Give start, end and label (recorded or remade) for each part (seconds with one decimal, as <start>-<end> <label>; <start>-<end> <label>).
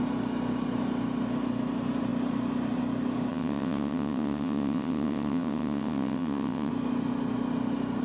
0.0-3.3 recorded; 3.3-6.7 remade; 6.7-8.0 recorded